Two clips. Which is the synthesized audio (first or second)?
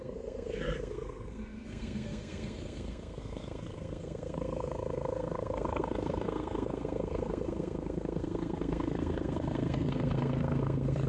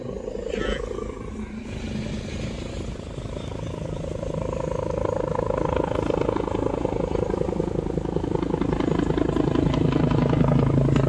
first